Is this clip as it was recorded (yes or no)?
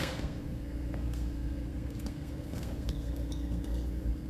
no